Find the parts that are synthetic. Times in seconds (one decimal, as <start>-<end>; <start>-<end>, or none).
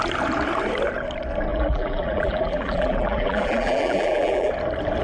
1.5-4.5